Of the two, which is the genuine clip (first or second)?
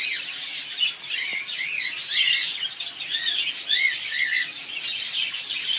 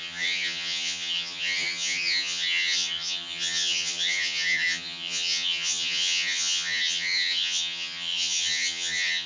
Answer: first